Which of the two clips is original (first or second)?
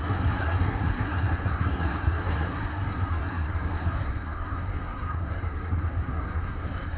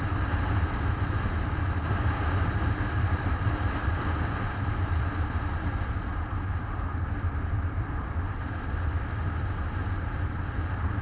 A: second